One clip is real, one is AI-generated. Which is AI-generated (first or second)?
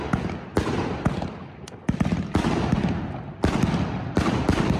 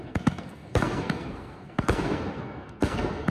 second